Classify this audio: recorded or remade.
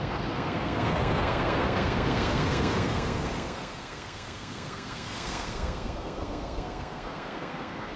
remade